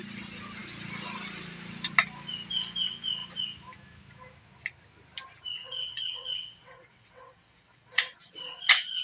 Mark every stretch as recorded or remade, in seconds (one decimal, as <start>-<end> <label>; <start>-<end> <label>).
0.0-5.6 recorded; 5.6-9.0 remade